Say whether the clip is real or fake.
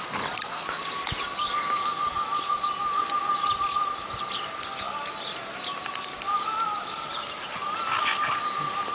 real